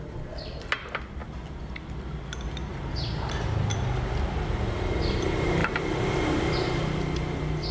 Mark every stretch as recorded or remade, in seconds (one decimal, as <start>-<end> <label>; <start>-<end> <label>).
0.0-2.6 recorded; 2.6-3.8 remade; 3.8-7.7 recorded